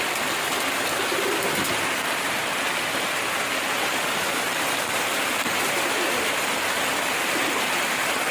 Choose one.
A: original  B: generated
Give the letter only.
A